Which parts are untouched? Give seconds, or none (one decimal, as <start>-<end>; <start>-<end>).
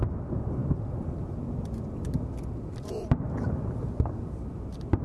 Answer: 0.6-3.6